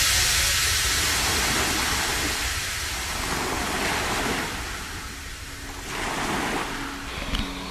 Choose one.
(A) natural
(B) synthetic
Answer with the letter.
A